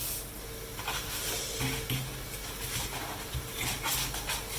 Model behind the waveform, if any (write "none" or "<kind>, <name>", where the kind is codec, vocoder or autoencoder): none